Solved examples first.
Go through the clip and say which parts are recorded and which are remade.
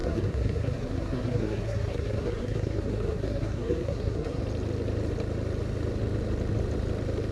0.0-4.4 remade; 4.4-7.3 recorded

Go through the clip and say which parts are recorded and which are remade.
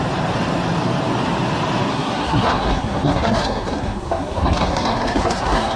0.0-1.9 recorded; 1.9-5.8 remade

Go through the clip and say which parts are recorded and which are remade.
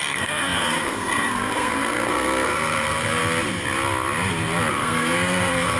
0.0-3.2 remade; 3.2-4.7 recorded; 4.7-5.8 remade